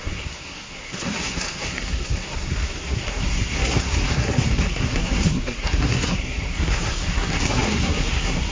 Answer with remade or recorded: remade